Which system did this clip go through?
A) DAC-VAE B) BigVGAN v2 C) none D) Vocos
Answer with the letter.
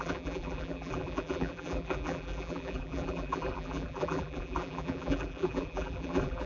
B